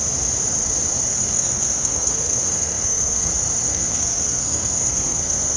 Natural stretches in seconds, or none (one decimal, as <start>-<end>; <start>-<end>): 0.0-1.1; 3.3-3.7